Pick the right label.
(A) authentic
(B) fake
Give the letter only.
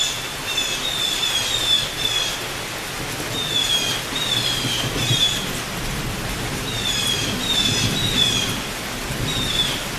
A